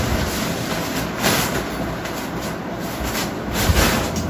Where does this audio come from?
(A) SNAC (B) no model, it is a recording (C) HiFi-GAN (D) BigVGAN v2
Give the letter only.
B